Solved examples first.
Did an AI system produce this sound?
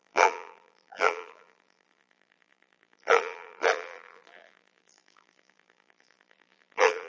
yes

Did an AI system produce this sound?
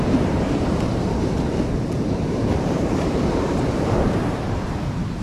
yes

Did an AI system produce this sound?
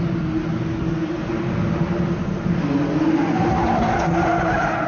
no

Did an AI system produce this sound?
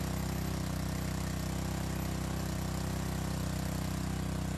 no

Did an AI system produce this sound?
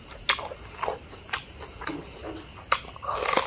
no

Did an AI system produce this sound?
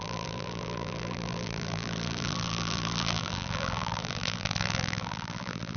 yes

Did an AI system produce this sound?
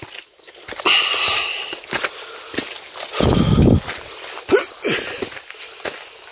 no